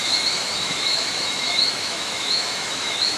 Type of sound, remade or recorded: remade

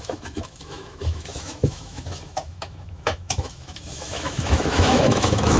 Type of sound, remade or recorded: remade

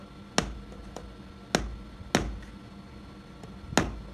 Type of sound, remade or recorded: recorded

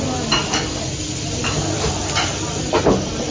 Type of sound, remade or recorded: recorded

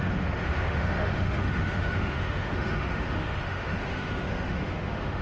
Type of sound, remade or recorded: remade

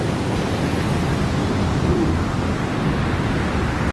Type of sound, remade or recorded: recorded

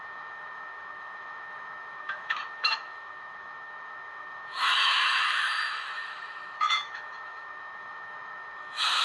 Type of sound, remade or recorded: remade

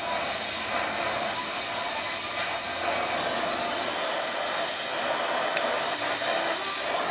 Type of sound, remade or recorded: recorded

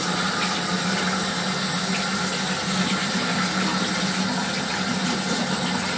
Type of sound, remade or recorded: recorded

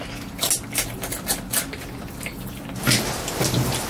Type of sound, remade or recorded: recorded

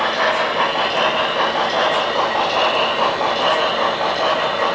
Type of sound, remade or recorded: recorded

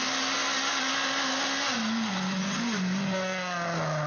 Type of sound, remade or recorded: recorded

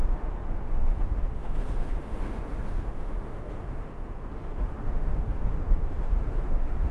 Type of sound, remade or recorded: remade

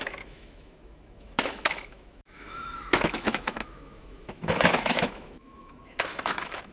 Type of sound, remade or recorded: remade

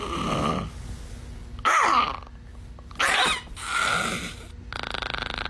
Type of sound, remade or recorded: recorded